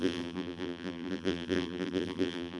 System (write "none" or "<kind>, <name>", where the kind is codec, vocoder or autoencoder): vocoder, BigVGAN v2